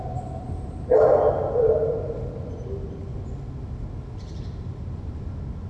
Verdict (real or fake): real